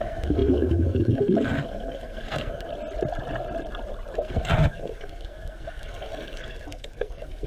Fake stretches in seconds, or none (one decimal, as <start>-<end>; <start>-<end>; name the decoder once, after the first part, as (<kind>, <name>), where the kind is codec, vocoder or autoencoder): 0.0-2.7 (codec, SNAC); 4.1-7.5